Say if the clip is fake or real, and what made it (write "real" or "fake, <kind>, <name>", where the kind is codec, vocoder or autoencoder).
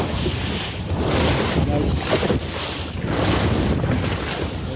real